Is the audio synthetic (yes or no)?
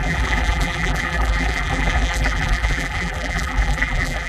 yes